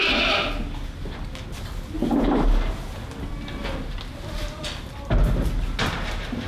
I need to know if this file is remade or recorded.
recorded